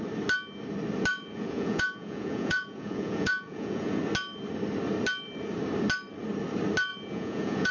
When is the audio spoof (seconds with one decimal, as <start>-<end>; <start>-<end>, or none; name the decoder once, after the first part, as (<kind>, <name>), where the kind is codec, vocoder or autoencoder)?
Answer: 1.1-4.0 (vocoder, Vocos); 6.9-7.7